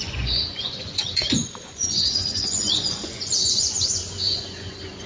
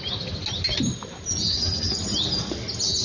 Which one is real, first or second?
second